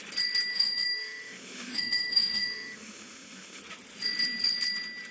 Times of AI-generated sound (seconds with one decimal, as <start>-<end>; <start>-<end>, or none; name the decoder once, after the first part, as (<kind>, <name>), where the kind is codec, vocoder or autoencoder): 0.5-3.6 (autoencoder, DAC-VAE)